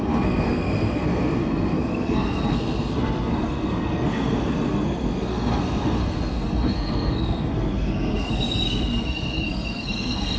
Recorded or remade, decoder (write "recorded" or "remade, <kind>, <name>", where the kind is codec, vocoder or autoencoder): remade, codec, SNAC